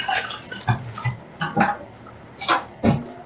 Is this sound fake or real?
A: real